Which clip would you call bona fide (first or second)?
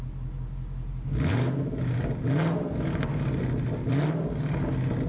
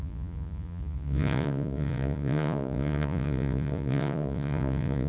first